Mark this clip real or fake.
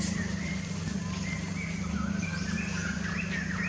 real